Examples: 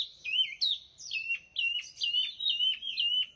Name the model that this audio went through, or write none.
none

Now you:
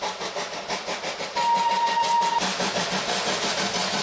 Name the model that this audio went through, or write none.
none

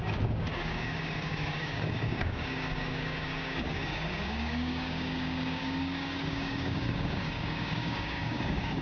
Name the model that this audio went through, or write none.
codec, DAC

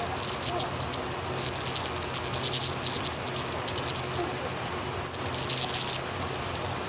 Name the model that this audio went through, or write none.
none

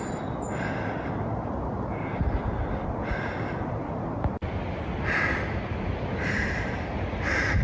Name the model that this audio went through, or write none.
none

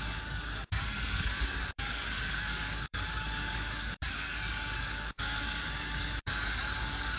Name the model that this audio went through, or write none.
codec, DAC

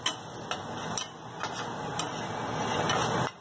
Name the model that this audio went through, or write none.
none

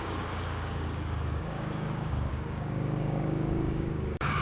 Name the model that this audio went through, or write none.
codec, DAC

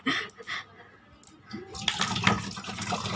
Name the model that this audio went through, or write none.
none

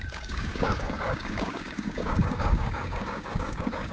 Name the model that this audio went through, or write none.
codec, DAC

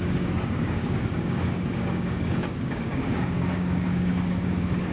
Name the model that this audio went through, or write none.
codec, DAC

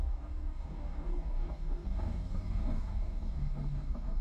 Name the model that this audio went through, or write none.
codec, DAC